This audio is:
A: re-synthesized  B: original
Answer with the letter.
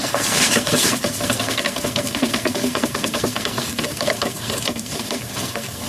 A